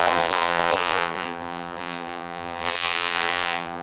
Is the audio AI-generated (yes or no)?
yes